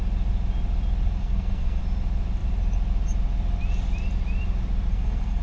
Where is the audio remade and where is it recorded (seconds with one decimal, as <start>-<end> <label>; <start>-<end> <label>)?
0.0-1.2 recorded; 1.2-1.8 remade; 1.8-4.9 recorded; 4.9-5.4 remade